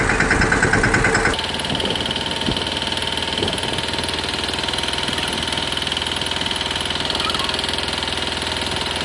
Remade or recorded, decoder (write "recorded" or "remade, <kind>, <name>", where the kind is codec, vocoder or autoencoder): recorded